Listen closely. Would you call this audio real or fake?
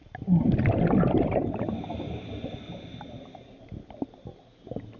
real